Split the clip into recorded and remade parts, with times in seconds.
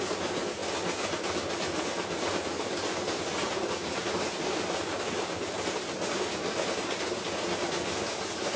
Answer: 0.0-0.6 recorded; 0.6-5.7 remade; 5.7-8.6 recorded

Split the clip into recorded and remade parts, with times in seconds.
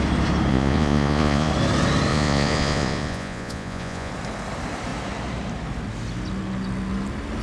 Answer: 0.0-0.5 recorded; 0.5-1.5 remade; 1.5-2.1 recorded; 2.1-4.1 remade; 4.1-7.4 recorded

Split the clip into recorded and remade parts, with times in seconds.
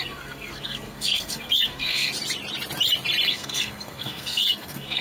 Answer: 0.0-2.1 remade; 2.1-3.3 recorded; 3.3-5.0 remade